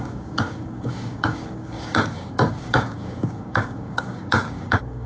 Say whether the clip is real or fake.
fake